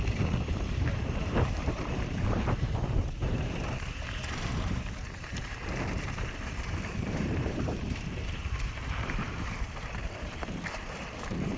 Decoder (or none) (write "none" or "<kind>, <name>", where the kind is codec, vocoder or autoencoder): vocoder, BigVGAN v2